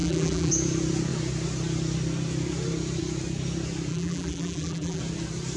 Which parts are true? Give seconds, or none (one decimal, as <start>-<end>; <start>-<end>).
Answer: 0.5-3.9; 5.0-5.6